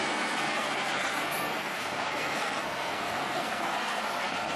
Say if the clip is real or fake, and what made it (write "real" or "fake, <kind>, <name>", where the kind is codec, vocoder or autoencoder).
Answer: fake, codec, SNAC